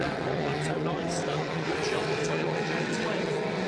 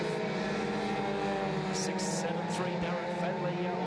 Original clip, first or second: second